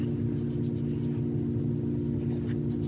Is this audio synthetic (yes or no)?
no